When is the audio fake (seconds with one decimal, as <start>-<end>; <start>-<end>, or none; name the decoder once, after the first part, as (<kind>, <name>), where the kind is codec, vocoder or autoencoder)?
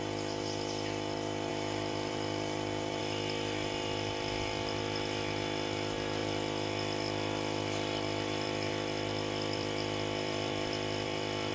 1.5-3.0 (vocoder, BigVGAN v2); 6.2-11.5